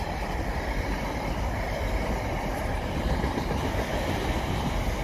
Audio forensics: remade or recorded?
recorded